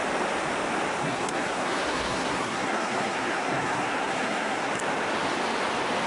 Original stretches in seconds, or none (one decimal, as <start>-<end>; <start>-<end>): 0.0-1.0; 4.7-6.1